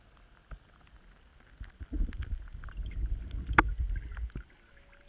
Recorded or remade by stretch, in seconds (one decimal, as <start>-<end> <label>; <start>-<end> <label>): 0.0-5.1 recorded